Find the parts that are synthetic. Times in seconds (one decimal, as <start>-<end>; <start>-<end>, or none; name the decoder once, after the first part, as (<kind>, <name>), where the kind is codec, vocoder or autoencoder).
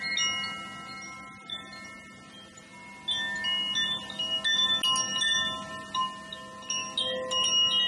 none